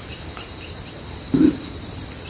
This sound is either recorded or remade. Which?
recorded